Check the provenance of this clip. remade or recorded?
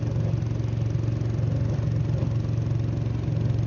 recorded